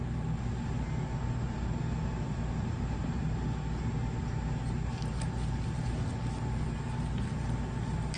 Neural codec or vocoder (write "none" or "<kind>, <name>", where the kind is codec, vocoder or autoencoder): none